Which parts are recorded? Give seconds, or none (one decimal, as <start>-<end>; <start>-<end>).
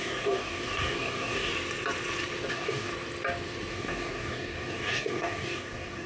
1.5-2.5; 2.9-3.7